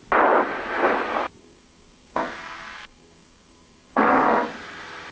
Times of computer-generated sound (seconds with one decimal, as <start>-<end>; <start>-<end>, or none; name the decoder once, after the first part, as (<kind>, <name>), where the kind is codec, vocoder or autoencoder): 1.4-4.5 (codec, SNAC)